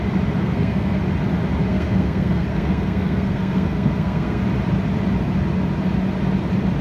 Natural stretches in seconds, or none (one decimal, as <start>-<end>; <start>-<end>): 0.0-0.4; 1.0-1.7; 4.4-6.8